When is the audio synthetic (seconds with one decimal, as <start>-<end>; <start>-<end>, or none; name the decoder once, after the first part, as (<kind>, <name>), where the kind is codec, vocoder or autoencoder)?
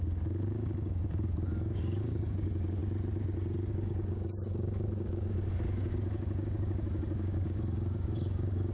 0.0-2.8 (codec, DAC); 3.7-8.7